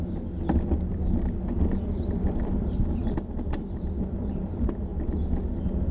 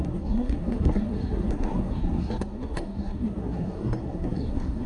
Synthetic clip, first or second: second